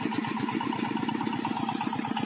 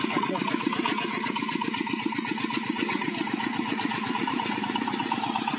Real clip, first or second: first